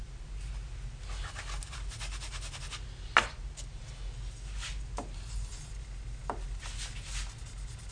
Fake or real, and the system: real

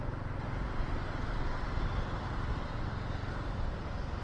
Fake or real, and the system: real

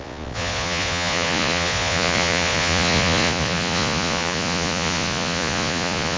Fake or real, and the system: fake, vocoder, Vocos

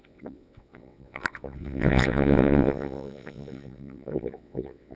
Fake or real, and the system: fake, vocoder, WaveNeXt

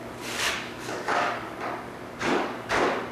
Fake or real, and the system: fake, codec, DAC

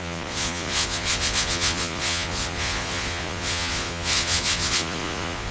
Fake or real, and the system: fake, vocoder, Vocos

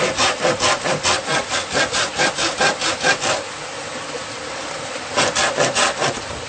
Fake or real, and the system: real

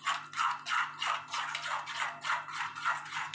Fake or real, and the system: real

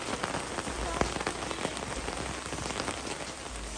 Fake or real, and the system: real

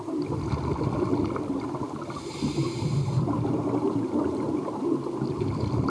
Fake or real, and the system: real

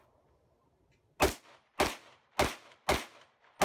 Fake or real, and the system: real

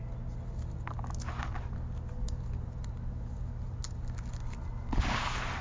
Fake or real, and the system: real